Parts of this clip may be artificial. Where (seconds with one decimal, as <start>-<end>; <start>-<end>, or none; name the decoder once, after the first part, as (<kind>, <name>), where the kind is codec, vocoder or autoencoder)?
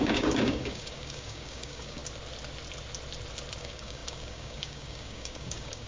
0.0-2.0 (codec, DAC); 3.6-5.9